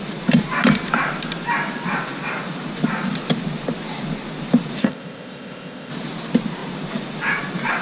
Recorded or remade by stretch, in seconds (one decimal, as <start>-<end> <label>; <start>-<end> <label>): 0.0-4.8 recorded; 4.8-5.9 remade; 5.9-7.8 recorded